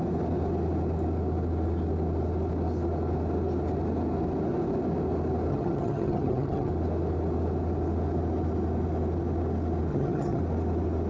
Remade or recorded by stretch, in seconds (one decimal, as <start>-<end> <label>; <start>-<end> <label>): 0.0-5.5 recorded; 5.5-6.7 remade; 6.7-9.9 recorded; 9.9-10.4 remade; 10.4-11.1 recorded